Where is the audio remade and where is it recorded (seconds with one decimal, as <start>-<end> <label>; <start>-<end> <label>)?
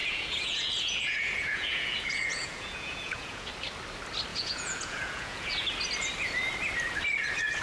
0.0-3.5 remade; 3.5-4.3 recorded; 4.3-5.5 remade; 5.5-7.6 recorded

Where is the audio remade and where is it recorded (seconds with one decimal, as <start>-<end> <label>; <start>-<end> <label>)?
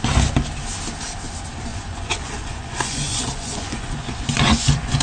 0.0-1.7 recorded; 1.7-5.0 remade